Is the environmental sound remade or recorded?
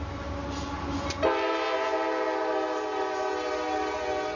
recorded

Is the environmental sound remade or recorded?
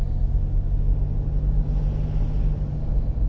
recorded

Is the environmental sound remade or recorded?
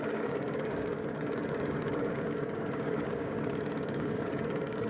remade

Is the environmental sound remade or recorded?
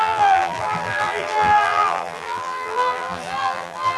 remade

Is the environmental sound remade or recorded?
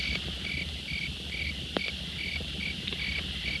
recorded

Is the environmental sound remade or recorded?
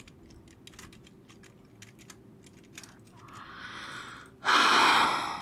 recorded